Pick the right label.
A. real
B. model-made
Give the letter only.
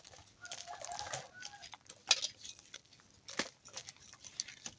A